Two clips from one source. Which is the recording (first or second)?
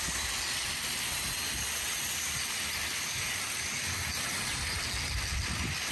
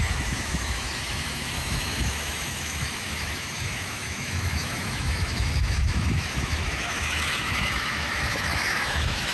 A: first